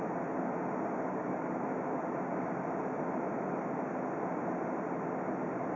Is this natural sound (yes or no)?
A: yes